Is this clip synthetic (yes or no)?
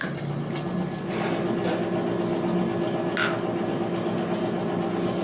no